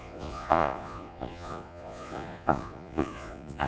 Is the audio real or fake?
fake